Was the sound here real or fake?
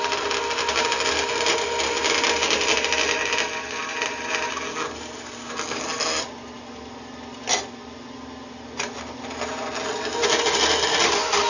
real